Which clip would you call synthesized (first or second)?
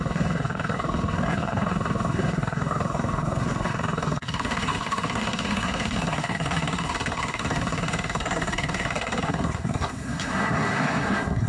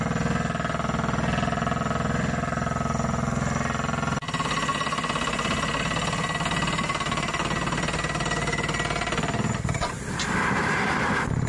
first